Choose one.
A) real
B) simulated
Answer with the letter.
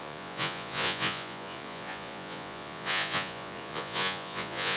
B